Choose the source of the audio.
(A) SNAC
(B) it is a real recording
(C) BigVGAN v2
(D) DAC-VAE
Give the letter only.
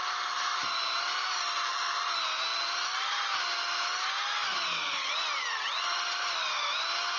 B